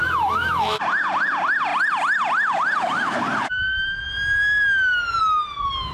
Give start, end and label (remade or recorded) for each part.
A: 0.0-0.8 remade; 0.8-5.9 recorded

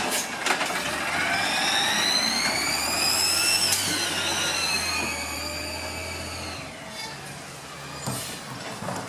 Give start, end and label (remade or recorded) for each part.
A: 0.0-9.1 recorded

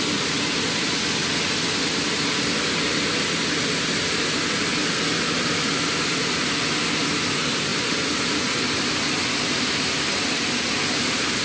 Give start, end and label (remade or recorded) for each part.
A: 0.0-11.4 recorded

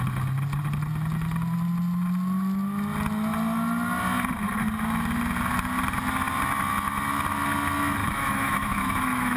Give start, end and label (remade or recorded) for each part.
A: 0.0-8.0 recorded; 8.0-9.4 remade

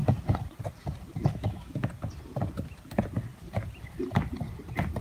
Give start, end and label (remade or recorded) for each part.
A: 0.0-1.3 recorded; 1.3-1.9 remade; 1.9-5.0 recorded

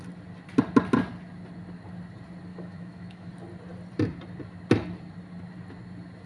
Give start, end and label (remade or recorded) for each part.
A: 0.0-2.5 recorded; 2.5-3.3 remade; 3.3-6.3 recorded

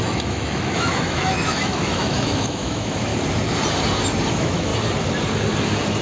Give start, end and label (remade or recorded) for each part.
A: 0.0-3.1 remade; 3.1-4.3 recorded; 4.3-4.7 remade; 4.7-6.0 recorded

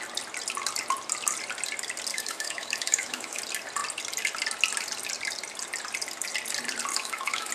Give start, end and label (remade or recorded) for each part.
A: 0.0-2.1 recorded; 2.1-3.4 remade; 3.4-6.9 recorded; 6.9-7.5 remade